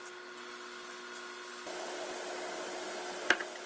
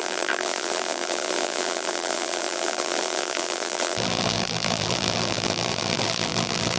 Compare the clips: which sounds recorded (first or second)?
first